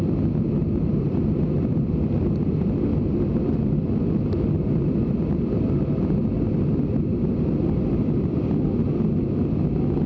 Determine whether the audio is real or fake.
real